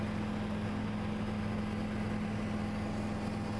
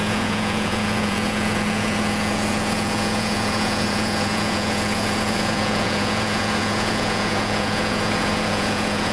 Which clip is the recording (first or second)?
first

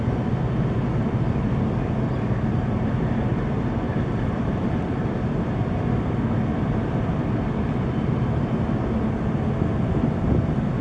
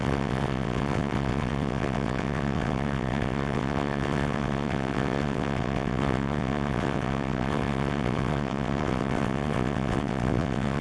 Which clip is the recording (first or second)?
first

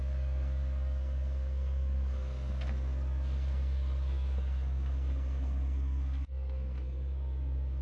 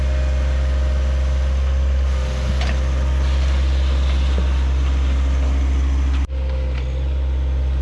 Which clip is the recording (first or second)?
second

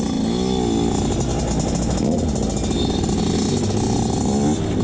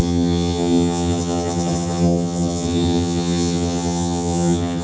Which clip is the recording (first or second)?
first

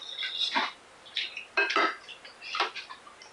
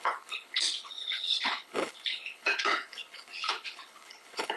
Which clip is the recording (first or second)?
first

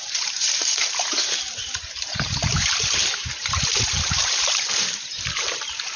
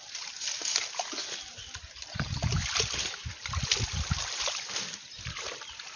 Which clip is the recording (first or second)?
second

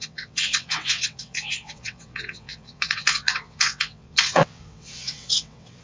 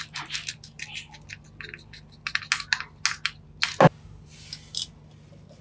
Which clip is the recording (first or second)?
second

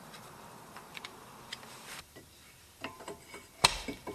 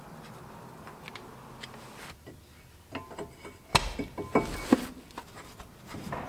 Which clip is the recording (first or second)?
second